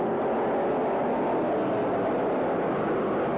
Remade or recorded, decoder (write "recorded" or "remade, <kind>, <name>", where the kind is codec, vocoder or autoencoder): recorded